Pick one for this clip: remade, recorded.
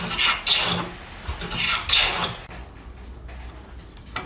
recorded